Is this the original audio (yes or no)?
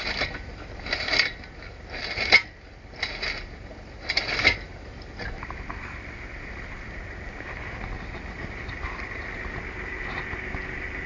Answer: yes